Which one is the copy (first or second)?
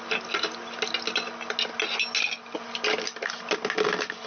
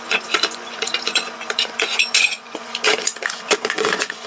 second